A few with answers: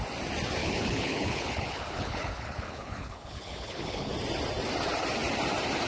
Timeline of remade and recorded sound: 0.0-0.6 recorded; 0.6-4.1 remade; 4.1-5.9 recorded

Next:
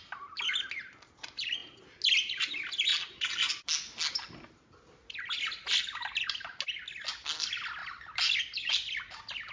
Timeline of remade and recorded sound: 0.0-9.5 recorded

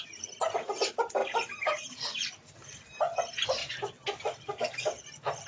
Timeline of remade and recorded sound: 0.0-3.6 remade; 3.6-5.5 recorded

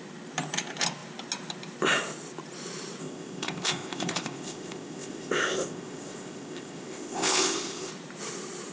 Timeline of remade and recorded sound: 0.0-3.0 recorded; 3.0-7.9 remade; 7.9-8.7 recorded

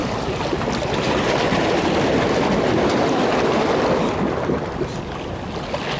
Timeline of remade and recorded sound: 0.0-6.0 recorded

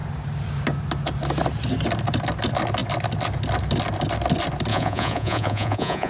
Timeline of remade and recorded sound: 0.0-4.7 recorded; 4.7-6.1 remade

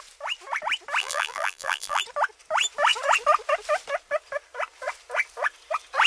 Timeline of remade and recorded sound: 0.0-1.0 recorded; 1.0-2.0 remade; 2.0-6.1 recorded

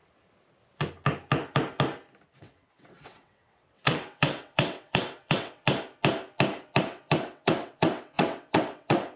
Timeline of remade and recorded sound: 0.0-2.4 recorded; 2.4-5.6 remade; 5.6-6.8 recorded; 6.8-9.2 remade